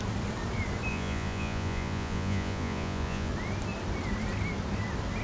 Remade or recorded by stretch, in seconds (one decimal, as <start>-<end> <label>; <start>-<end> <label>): 0.0-0.9 recorded; 0.9-3.3 remade; 3.3-5.2 recorded